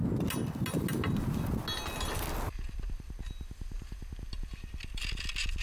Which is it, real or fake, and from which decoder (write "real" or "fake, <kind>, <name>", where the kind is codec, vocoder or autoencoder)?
real